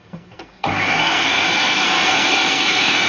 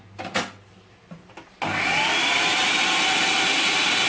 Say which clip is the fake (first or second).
first